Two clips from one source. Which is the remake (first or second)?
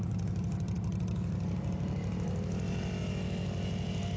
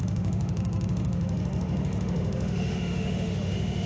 second